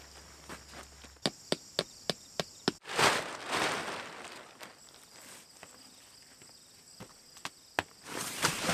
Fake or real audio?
real